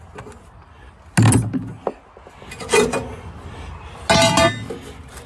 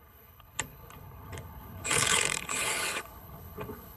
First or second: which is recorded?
first